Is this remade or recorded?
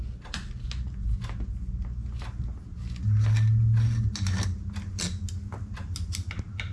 recorded